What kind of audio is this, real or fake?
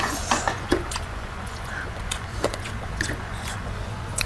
fake